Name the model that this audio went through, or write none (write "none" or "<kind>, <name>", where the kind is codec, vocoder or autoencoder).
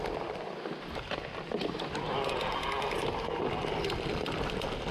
none